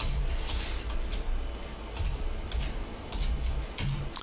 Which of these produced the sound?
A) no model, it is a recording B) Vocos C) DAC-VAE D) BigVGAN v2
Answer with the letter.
A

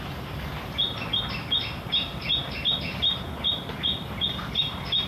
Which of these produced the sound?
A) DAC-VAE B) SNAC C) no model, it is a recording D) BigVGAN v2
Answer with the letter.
C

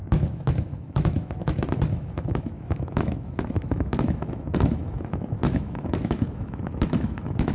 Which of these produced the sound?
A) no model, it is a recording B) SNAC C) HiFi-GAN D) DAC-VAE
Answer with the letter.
D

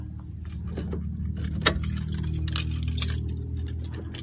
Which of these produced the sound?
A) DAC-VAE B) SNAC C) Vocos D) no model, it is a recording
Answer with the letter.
D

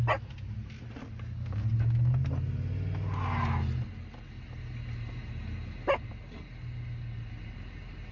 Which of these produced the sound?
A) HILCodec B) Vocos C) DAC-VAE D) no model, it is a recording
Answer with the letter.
D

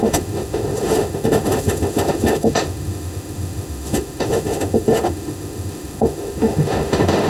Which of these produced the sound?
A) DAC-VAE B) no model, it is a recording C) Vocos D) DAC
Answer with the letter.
A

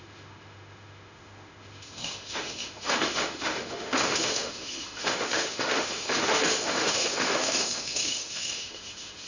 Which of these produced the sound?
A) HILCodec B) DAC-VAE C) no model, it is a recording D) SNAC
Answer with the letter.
B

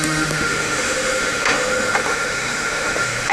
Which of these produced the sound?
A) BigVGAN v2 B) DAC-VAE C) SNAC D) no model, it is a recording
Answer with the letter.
B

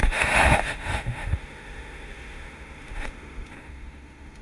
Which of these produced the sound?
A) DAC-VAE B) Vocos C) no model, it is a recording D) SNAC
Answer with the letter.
A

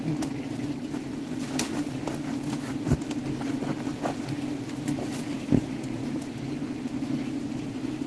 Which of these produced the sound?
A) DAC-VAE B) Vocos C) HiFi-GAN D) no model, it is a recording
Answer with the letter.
D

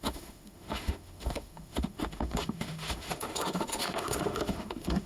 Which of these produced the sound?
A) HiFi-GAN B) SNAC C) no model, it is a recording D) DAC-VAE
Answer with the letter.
D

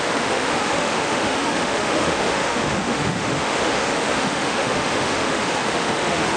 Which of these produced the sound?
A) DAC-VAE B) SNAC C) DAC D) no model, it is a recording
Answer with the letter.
A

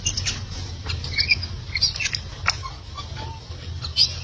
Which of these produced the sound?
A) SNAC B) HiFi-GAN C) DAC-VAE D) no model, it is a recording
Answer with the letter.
D